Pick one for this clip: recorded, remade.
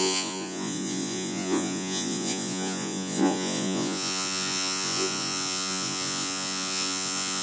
remade